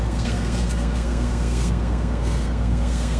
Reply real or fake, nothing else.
fake